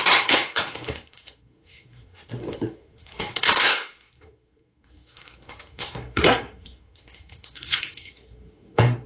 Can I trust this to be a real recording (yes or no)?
no